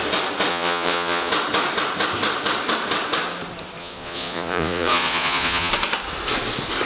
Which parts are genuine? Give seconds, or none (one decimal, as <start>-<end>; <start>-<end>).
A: 0.0-0.5; 1.3-3.8; 5.7-6.9